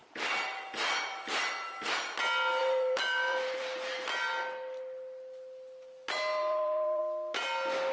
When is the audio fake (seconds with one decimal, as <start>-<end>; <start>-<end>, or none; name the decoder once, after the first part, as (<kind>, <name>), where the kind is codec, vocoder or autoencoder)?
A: 0.0-1.3 (vocoder, BigVGAN v2); 2.6-4.3; 6.4-7.0

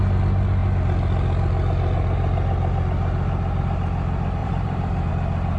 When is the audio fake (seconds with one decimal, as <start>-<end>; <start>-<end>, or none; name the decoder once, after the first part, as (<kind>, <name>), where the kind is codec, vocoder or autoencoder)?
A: 4.4-5.1 (vocoder, BigVGAN v2)

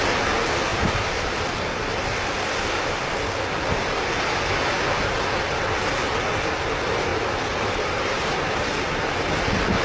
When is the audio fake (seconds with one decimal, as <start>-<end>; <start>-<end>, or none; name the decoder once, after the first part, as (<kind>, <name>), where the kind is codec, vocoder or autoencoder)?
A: 0.7-3.4 (vocoder, BigVGAN v2); 7.1-9.3

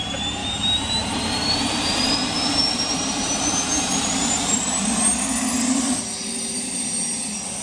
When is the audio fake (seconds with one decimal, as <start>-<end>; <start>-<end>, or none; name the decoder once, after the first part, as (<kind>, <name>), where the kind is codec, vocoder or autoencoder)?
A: 0.4-4.5 (vocoder, BigVGAN v2)

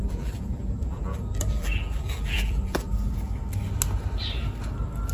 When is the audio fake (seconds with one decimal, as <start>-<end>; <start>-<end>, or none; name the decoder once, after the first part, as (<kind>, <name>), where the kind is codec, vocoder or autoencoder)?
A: 0.0-3.1 (vocoder, BigVGAN v2)

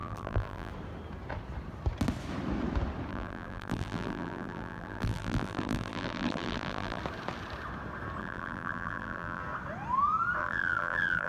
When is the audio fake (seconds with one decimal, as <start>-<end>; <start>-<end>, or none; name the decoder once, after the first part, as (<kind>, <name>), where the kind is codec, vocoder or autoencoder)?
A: 0.0-0.7 (vocoder, BigVGAN v2); 3.1-7.0; 8.2-9.4; 10.4-11.3

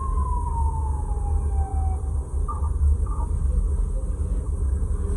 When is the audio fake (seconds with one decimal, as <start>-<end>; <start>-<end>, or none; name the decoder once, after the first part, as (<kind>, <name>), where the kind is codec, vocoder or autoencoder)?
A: 1.7-3.9 (vocoder, BigVGAN v2)